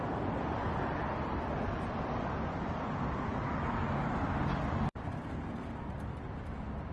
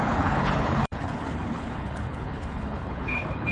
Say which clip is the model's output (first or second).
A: second